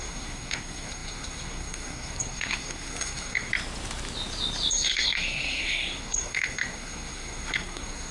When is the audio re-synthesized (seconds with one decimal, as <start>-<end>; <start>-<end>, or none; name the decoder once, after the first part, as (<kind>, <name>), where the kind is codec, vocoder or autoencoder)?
0.0-3.5 (codec, SNAC); 4.7-8.1